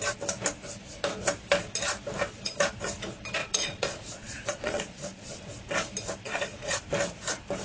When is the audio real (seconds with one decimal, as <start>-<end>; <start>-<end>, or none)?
0.0-3.4; 5.4-6.2; 6.8-7.6

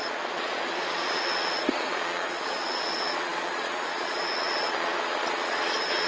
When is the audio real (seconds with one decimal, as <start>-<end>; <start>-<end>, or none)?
none

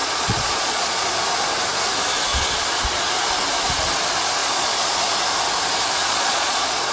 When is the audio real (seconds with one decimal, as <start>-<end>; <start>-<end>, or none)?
1.1-2.3; 3.1-4.4; 5.0-6.0

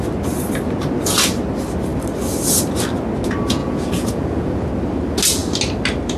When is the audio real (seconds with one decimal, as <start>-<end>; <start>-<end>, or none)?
0.0-3.6; 4.7-6.2